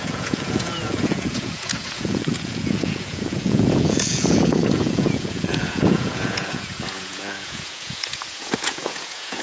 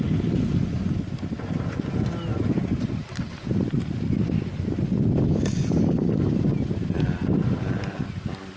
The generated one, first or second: first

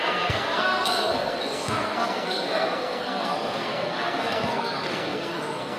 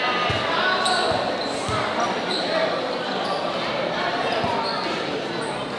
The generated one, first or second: first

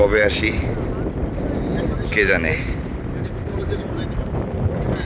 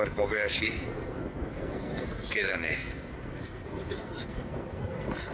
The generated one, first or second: second